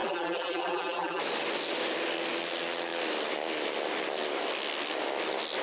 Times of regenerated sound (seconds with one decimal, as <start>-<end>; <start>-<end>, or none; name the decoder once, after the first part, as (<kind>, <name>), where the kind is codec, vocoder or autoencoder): 0.0-1.2 (vocoder, BigVGAN v2)